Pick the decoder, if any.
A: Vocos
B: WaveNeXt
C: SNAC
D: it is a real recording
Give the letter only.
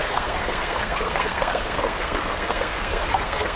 C